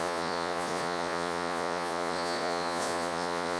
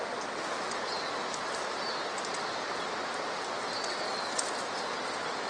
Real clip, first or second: second